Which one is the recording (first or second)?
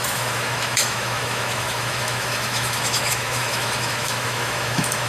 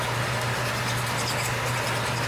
second